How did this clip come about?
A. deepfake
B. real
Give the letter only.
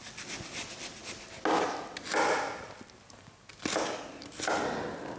B